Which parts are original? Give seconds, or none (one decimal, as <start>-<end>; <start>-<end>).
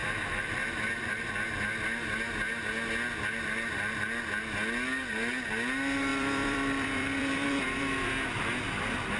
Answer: 1.3-6.1; 7.8-9.2